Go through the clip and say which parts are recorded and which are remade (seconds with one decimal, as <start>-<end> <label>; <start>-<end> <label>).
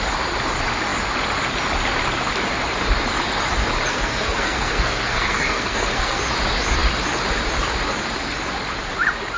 0.0-3.9 recorded; 3.9-6.2 remade; 6.2-9.4 recorded